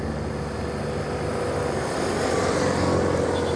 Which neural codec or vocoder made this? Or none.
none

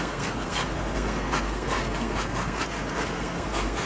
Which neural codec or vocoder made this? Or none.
codec, SNAC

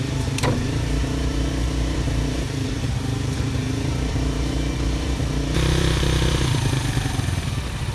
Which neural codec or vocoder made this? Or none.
vocoder, BigVGAN v2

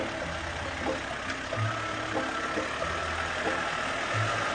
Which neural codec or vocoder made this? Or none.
none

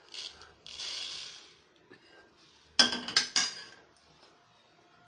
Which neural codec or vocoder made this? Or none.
none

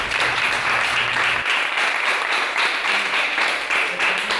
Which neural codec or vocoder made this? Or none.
vocoder, BigVGAN v2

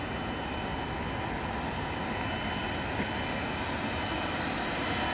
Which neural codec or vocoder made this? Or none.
none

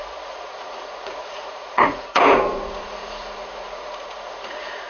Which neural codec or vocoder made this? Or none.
vocoder, Vocos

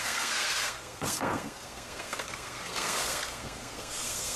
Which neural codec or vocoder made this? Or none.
codec, SNAC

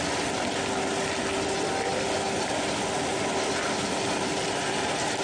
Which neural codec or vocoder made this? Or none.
none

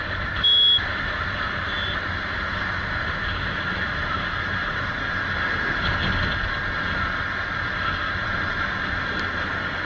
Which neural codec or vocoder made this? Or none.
none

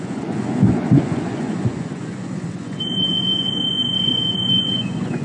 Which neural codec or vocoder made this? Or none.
vocoder, Vocos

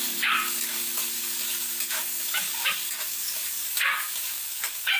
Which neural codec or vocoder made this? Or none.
codec, DAC